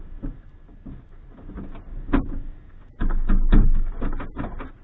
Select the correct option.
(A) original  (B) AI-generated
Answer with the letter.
A